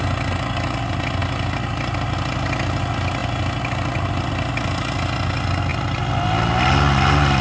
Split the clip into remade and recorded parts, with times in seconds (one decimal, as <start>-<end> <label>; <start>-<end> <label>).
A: 0.0-7.4 recorded